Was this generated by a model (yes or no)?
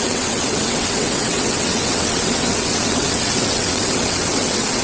yes